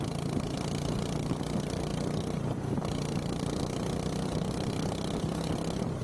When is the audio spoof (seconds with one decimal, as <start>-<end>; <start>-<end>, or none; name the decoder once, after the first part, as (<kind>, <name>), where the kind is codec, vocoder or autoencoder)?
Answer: none